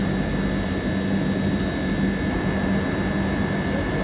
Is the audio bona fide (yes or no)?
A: yes